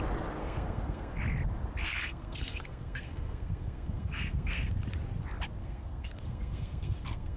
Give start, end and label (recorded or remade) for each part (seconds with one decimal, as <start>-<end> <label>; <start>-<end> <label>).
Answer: 0.0-0.4 recorded; 0.4-1.1 remade; 1.1-1.8 recorded; 1.8-4.7 remade; 4.7-5.6 recorded; 5.6-7.4 remade